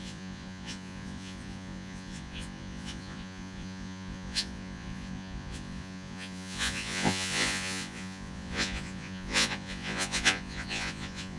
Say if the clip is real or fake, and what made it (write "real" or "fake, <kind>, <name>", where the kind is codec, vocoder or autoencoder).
fake, vocoder, Vocos